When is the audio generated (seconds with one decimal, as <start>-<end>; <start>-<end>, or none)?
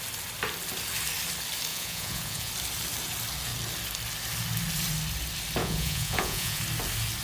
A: 1.7-2.5; 5.6-6.6